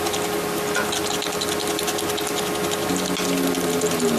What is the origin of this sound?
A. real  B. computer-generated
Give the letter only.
A